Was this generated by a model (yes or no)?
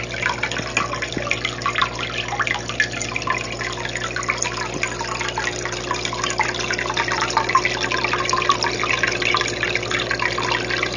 no